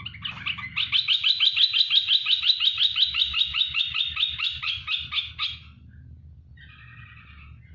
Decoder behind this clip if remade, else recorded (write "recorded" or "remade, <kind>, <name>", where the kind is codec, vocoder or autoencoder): recorded